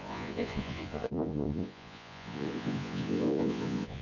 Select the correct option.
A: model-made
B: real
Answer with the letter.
A